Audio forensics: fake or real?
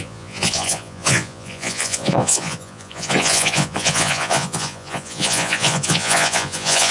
fake